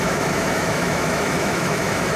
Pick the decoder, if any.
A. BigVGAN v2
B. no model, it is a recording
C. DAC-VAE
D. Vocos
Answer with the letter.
C